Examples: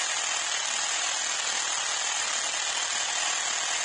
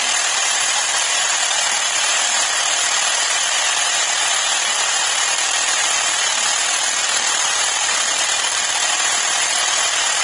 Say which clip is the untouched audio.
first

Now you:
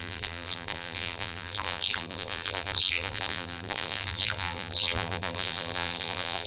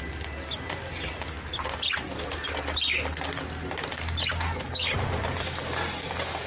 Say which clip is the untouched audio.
second